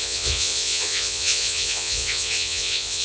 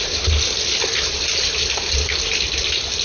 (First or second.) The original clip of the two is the second